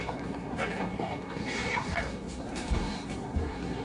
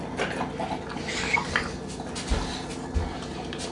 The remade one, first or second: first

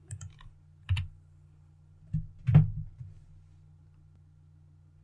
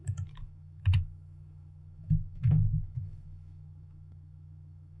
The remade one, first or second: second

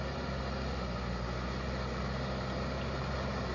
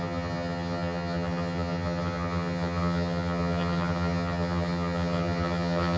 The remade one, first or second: second